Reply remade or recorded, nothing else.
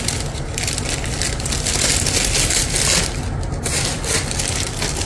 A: recorded